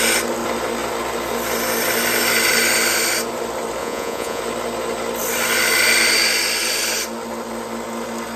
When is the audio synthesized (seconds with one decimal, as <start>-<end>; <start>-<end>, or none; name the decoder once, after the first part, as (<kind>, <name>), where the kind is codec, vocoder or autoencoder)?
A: 3.8-4.4 (vocoder, Vocos)